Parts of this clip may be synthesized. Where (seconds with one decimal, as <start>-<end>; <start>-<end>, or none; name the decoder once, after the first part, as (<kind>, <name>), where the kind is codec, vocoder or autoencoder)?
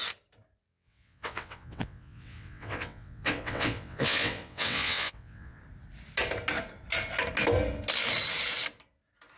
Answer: 0.7-5.6 (vocoder, WaveNeXt)